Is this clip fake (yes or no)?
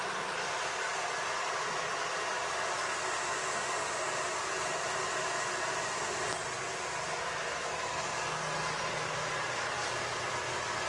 no